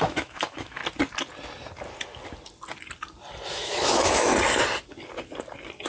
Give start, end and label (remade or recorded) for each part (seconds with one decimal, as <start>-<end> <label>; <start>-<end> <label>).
0.0-0.8 remade; 0.8-3.5 recorded; 3.5-4.3 remade; 4.3-5.9 recorded